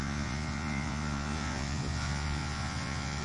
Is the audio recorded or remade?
remade